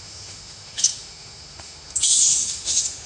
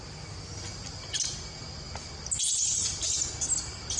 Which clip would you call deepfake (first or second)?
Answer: first